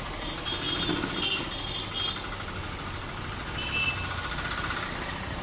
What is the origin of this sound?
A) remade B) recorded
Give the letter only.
B